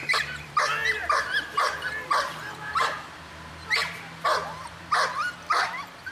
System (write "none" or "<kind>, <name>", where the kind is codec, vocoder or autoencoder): vocoder, BigVGAN v2